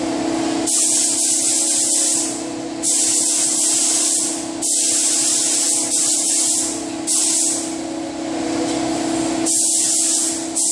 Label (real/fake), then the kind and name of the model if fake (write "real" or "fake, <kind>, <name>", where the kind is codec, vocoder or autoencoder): real